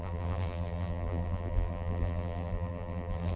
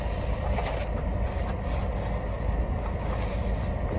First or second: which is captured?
second